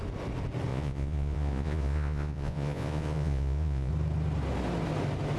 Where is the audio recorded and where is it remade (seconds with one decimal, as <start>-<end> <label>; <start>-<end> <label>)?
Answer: 0.0-0.7 recorded; 0.7-3.9 remade; 3.9-5.4 recorded